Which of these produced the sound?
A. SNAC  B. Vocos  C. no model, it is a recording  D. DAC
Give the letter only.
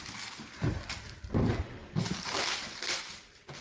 C